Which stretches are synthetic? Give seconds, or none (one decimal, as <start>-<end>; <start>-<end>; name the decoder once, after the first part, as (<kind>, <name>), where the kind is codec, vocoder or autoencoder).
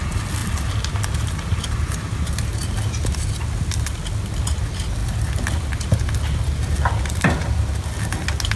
none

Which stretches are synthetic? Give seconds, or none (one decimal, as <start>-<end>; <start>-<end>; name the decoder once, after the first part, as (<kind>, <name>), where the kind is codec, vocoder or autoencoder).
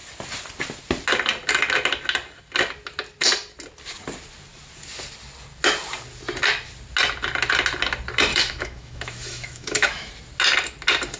8.3-10.1 (autoencoder, DAC-VAE)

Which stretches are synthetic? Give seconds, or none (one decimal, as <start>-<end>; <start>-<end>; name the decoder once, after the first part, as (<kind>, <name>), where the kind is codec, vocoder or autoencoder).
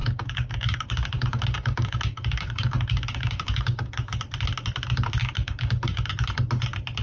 0.0-4.2 (codec, DAC); 5.2-6.1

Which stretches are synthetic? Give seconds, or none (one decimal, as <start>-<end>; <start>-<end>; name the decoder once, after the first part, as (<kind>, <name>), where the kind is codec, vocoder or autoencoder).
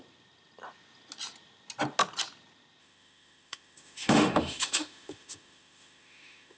2.8-6.6 (autoencoder, DAC-VAE)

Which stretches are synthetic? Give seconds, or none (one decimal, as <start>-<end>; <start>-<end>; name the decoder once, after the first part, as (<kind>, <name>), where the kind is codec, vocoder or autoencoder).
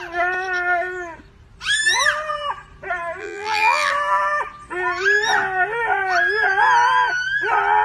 3.2-3.9 (vocoder, BigVGAN v2)